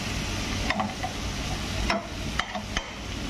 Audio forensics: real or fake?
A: real